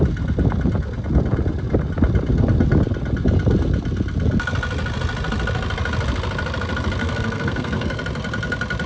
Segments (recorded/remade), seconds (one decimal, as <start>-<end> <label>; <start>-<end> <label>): 0.0-7.0 recorded; 7.0-8.0 remade; 8.0-8.9 recorded

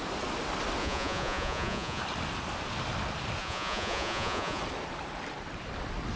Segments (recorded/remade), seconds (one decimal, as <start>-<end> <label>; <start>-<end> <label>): 0.0-0.8 recorded; 0.8-2.0 remade; 2.0-3.4 recorded; 3.4-4.6 remade; 4.6-6.2 recorded

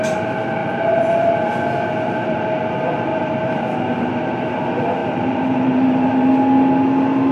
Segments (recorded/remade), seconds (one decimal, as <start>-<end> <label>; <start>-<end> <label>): 0.0-0.6 recorded; 0.6-1.3 remade; 1.3-3.1 recorded; 3.1-4.1 remade; 4.1-5.0 recorded; 5.0-6.3 remade; 6.3-7.3 recorded

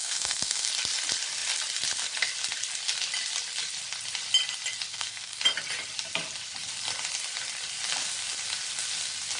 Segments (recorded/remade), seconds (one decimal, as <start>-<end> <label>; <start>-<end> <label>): 0.0-0.7 remade; 0.7-4.9 recorded; 4.9-5.4 remade; 5.4-9.4 recorded

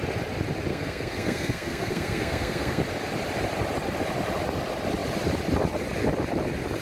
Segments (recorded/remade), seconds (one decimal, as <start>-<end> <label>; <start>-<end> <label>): 0.0-0.7 recorded; 0.7-2.8 remade; 2.8-6.8 recorded

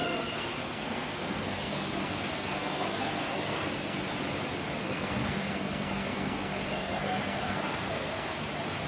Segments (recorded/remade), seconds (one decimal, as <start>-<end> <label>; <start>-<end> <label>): 0.0-4.0 remade; 4.0-4.8 recorded; 4.8-8.5 remade; 8.5-8.9 recorded

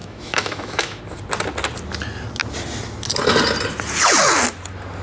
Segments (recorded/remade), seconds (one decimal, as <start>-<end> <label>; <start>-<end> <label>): 0.0-1.0 remade; 1.0-5.0 recorded

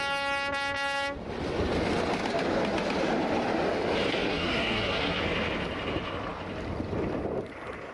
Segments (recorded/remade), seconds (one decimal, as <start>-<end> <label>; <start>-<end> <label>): 0.0-4.1 recorded; 4.1-5.2 remade; 5.2-7.9 recorded